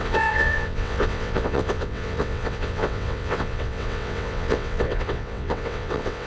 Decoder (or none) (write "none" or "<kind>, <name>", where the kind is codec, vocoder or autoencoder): vocoder, WaveNeXt